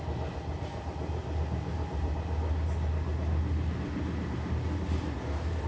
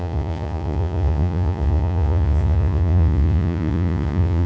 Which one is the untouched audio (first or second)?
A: first